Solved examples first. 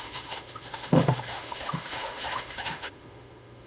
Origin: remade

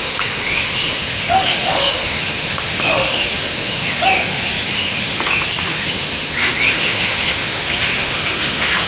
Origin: remade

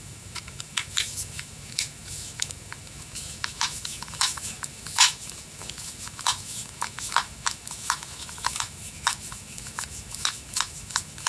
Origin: remade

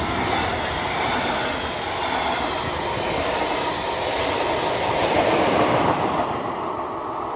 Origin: recorded